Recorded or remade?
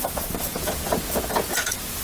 remade